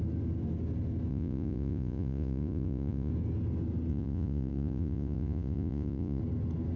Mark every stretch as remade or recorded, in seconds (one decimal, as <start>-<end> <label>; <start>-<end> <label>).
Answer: 0.0-1.1 recorded; 1.1-3.1 remade; 3.1-3.9 recorded; 3.9-6.2 remade; 6.2-6.8 recorded